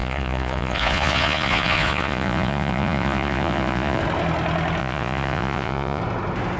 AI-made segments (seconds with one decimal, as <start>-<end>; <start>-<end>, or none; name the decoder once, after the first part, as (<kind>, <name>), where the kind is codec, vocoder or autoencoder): 0.0-4.0 (vocoder, Vocos); 4.8-6.0